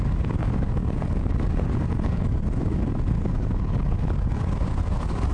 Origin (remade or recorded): remade